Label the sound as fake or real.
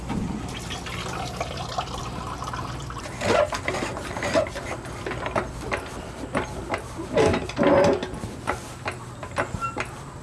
real